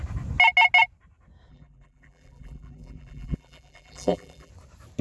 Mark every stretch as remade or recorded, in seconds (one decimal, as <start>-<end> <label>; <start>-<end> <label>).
0.0-1.5 recorded; 1.5-4.5 remade; 4.5-5.0 recorded